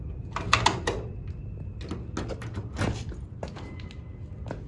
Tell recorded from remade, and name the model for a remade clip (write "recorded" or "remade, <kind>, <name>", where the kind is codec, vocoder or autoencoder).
recorded